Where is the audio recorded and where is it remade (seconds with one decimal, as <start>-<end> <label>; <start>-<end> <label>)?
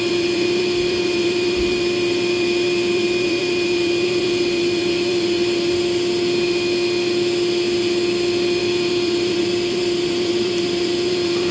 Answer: 0.0-5.8 remade; 5.8-8.6 recorded; 8.6-11.5 remade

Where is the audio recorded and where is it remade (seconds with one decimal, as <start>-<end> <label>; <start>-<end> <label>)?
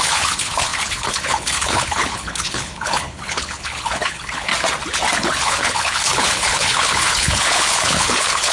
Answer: 0.0-4.5 remade; 4.5-5.2 recorded; 5.2-8.5 remade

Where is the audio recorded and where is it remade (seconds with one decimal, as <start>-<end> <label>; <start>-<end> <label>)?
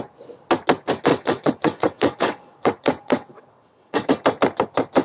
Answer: 0.0-1.1 recorded; 1.1-4.1 remade; 4.1-5.0 recorded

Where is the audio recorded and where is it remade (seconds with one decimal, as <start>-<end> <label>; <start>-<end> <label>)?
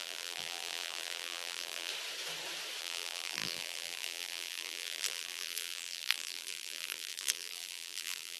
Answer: 0.0-1.9 remade; 1.9-2.8 recorded; 2.8-8.4 remade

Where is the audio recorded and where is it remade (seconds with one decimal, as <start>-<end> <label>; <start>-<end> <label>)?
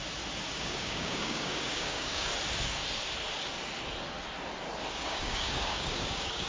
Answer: 0.0-0.5 recorded; 0.5-2.3 remade; 2.3-4.9 recorded; 4.9-6.5 remade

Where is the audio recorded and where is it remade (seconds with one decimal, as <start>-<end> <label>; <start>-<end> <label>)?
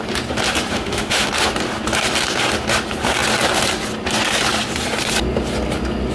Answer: 0.0-0.7 recorded; 0.7-1.3 remade; 1.3-6.1 recorded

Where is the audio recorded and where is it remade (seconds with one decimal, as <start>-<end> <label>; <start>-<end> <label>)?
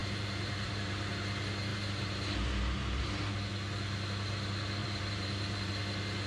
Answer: 0.0-1.1 remade; 1.1-1.7 recorded; 1.7-3.0 remade; 3.0-4.8 recorded; 4.8-5.7 remade; 5.7-6.3 recorded